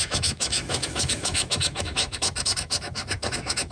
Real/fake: fake